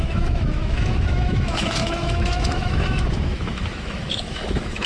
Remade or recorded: remade